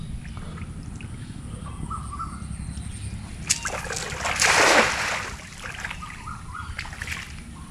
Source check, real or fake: real